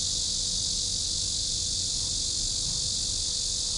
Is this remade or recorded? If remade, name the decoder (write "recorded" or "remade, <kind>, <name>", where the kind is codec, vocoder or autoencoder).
recorded